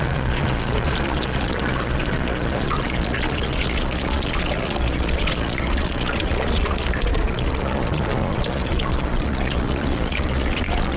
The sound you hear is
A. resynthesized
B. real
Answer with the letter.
A